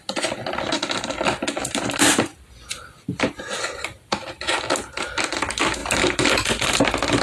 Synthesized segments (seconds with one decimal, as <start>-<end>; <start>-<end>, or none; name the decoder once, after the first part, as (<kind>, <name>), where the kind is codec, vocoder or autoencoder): none